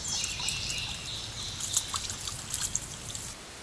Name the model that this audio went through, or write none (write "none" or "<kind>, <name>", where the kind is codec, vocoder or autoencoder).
none